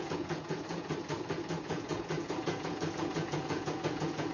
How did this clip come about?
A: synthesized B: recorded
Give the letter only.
A